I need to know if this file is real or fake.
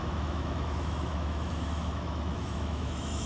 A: fake